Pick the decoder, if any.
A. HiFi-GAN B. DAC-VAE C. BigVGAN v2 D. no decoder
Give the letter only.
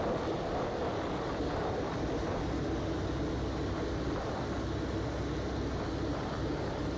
D